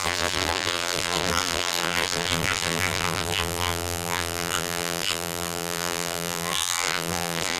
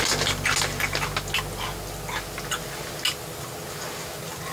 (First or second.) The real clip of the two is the second